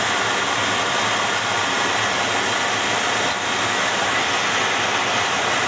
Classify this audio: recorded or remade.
recorded